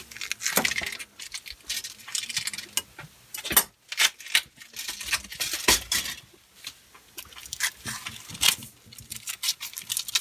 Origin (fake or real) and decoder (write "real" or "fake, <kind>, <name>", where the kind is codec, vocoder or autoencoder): real